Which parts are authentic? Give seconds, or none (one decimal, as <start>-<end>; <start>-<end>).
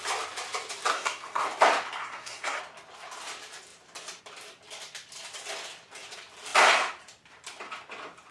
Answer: 0.0-0.9; 1.4-2.0; 2.6-8.3